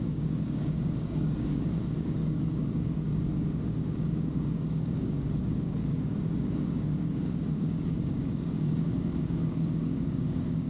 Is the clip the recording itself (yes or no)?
no